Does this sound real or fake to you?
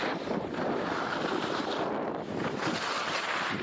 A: fake